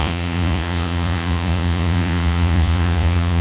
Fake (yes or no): yes